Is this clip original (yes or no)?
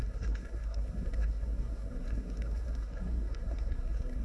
no